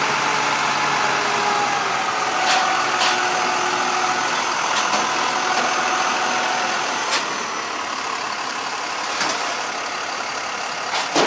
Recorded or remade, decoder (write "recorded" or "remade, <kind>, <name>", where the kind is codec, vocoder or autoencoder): recorded